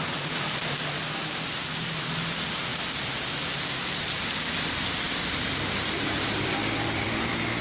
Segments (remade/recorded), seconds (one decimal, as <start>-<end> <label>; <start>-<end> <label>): 0.0-2.7 recorded; 2.7-7.6 remade